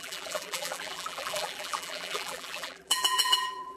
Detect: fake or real fake